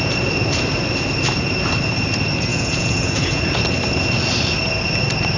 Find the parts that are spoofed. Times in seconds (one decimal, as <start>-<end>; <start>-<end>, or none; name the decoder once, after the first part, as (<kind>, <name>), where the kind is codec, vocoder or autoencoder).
2.5-3.4 (vocoder, Vocos)